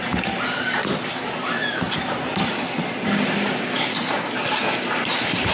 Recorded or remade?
recorded